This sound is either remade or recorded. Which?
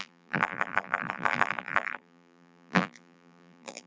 remade